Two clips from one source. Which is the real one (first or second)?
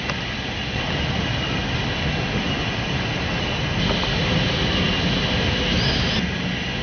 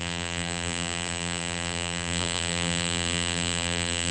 first